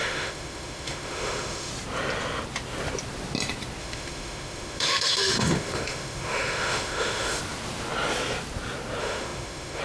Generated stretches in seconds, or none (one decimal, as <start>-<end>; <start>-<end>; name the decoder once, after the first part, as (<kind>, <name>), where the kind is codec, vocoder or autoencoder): 0.0-1.7 (autoencoder, DAC-VAE); 3.8-7.4; 9.0-9.8